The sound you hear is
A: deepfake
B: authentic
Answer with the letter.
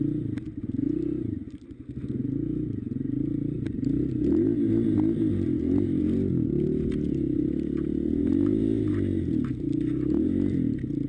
B